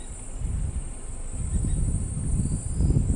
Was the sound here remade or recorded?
remade